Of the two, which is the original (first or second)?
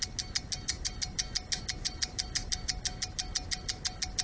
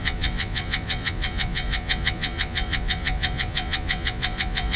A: first